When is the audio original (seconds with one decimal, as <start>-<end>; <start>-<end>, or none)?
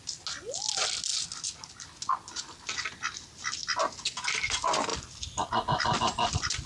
0.0-6.7